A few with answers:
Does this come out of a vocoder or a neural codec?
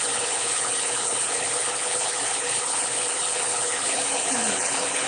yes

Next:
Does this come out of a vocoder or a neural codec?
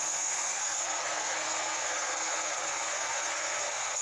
yes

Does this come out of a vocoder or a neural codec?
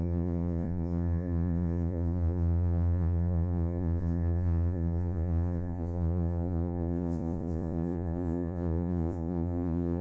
yes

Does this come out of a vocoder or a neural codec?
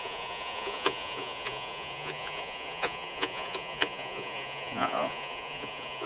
yes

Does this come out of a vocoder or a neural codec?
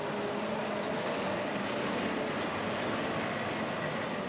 no